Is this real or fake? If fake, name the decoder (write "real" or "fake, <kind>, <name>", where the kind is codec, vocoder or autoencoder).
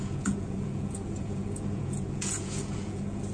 fake, vocoder, Vocos